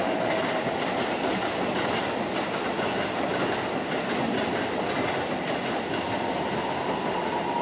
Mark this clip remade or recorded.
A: recorded